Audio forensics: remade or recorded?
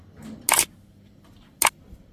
recorded